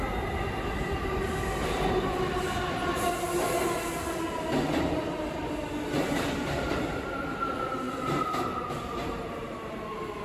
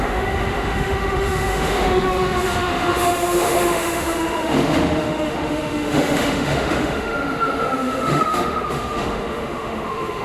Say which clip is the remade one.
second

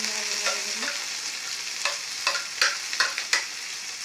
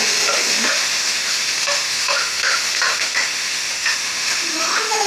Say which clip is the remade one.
second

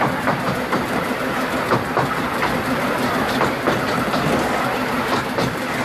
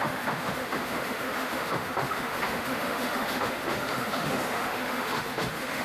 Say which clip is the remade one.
second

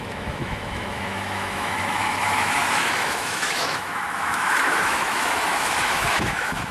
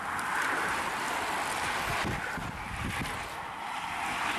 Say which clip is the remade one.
first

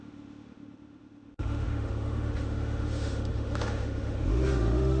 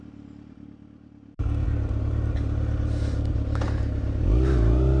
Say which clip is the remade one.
first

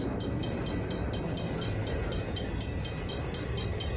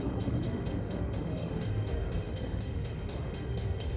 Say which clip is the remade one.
second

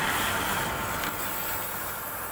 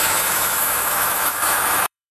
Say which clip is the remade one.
second